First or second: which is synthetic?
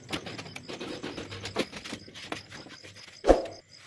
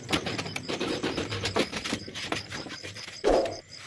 second